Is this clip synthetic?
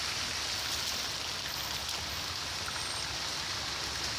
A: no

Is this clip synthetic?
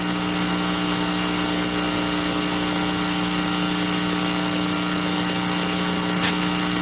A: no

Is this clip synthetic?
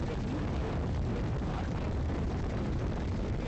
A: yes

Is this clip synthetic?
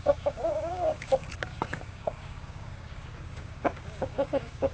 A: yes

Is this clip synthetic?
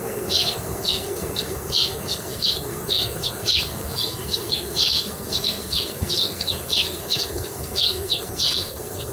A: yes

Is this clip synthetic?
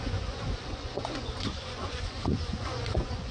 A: yes